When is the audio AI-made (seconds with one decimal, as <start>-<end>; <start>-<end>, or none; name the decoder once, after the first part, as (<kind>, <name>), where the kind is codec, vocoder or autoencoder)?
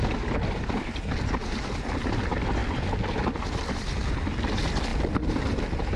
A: none